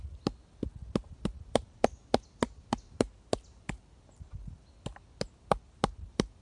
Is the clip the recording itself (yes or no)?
yes